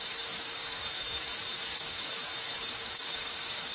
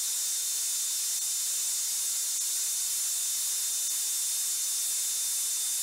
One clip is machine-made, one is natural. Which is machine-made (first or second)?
first